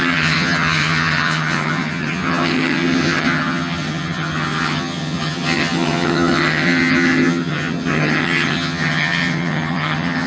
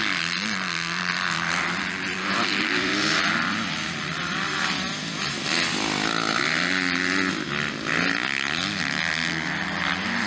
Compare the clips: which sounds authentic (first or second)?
second